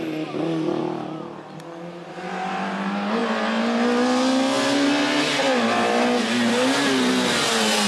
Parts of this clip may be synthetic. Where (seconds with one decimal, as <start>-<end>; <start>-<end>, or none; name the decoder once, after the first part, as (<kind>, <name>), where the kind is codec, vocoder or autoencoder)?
none